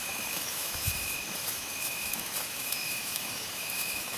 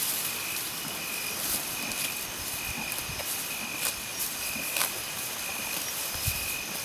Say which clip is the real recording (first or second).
second